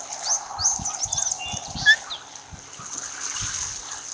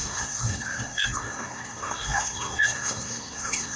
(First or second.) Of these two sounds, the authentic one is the first